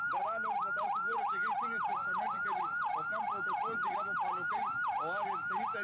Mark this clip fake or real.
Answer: real